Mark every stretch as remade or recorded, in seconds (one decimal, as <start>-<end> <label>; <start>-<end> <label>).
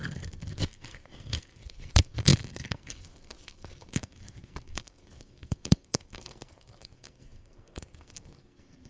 0.0-8.9 remade